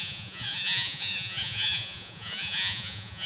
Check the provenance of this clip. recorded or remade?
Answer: remade